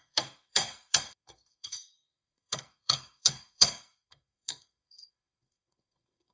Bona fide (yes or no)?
no